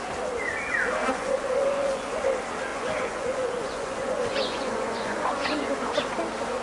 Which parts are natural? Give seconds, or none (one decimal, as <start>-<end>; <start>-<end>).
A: 0.0-1.0; 2.2-2.7; 5.7-6.6